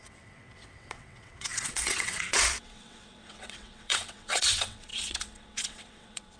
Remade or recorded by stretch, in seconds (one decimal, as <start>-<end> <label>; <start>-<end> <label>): 0.0-6.4 remade